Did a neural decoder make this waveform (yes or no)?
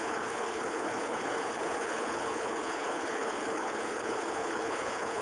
yes